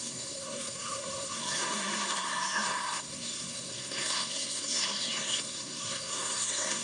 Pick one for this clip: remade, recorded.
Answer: remade